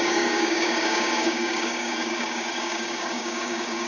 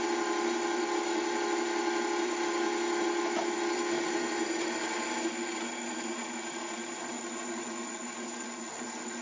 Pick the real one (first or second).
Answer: second